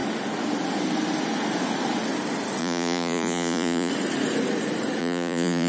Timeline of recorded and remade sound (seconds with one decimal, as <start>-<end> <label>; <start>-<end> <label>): 0.0-2.6 recorded; 2.6-3.9 remade; 3.9-5.0 recorded; 5.0-5.7 remade